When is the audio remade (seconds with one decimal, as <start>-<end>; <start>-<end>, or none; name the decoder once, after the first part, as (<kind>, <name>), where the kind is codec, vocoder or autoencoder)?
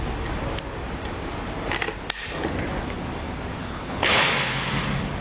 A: 3.6-4.2 (codec, HILCodec)